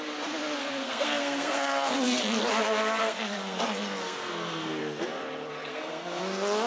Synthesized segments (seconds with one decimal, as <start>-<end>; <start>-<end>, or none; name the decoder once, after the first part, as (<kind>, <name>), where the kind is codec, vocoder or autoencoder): 0.6-2.2 (codec, SNAC); 3.0-3.6; 4.0-4.8; 5.7-6.2